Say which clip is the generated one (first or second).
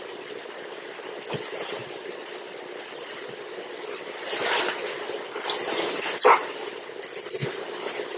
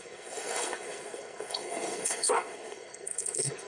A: second